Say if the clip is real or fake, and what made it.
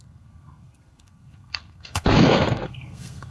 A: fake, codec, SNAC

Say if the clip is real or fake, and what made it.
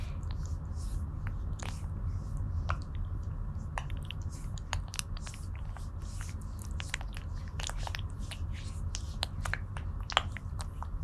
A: real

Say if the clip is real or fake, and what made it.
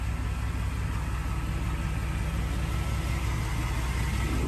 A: real